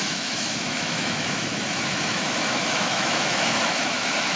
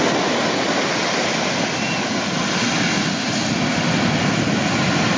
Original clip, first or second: second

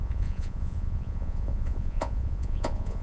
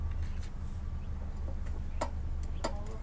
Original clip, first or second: second